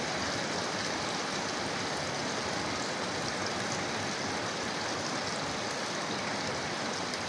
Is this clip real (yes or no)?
yes